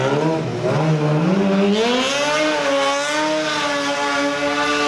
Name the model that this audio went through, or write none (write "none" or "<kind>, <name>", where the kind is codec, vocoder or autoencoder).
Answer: none